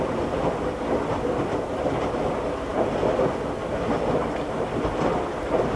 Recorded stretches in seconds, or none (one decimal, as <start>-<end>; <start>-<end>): 0.0-5.8

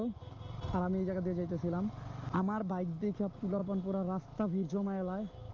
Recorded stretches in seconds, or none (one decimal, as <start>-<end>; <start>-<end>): 0.0-3.6